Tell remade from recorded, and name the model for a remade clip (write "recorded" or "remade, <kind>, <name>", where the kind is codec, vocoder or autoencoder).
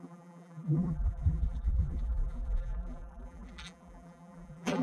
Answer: remade, vocoder, BigVGAN v2